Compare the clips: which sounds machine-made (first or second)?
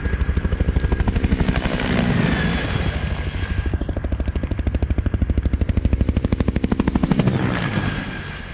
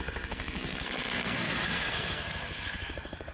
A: second